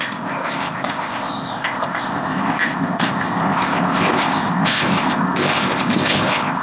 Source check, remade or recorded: remade